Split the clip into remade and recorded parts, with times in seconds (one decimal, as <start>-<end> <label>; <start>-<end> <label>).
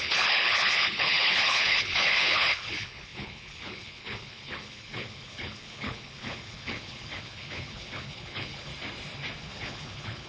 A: 0.0-8.7 remade; 8.7-9.4 recorded; 9.4-10.3 remade